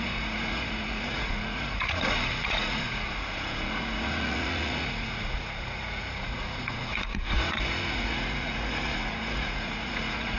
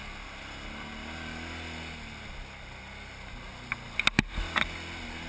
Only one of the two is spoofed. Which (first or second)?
first